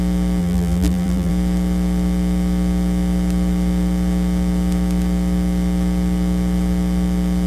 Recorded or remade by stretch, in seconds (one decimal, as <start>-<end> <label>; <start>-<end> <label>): 0.0-0.4 recorded; 0.4-1.3 remade; 1.3-7.5 recorded